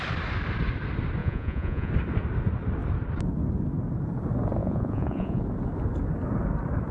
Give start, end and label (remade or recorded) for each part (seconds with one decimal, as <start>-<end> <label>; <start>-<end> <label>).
0.0-1.2 recorded; 1.2-1.9 remade; 1.9-4.6 recorded; 4.6-5.4 remade; 5.4-6.9 recorded